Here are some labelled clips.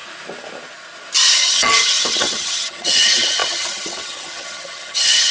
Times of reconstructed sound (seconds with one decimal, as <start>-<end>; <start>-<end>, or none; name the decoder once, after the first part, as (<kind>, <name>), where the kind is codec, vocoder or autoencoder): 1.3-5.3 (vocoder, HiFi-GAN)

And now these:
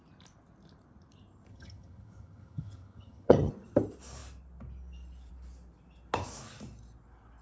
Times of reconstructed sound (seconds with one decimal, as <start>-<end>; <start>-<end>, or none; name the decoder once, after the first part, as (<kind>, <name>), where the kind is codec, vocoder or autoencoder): 1.5-3.5 (vocoder, HiFi-GAN)

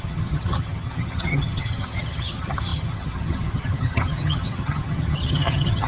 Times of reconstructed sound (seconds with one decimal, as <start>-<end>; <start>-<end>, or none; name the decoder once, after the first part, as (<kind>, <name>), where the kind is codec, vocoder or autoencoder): 0.0-5.9 (vocoder, HiFi-GAN)

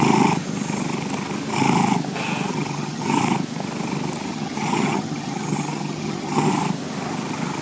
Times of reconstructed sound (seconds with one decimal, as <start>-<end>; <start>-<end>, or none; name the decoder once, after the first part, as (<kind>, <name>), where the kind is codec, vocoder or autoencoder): 2.5-3.2 (vocoder, HiFi-GAN); 4.3-6.5

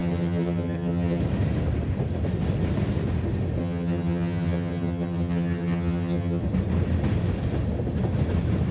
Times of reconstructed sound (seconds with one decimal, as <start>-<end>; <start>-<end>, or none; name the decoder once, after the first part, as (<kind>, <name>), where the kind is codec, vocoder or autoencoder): 0.0-1.2 (vocoder, HiFi-GAN); 3.6-6.4

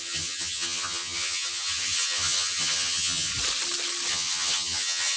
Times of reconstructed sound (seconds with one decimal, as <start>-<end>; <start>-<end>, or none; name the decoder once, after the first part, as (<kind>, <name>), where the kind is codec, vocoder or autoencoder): 0.0-3.3 (vocoder, HiFi-GAN); 4.1-5.2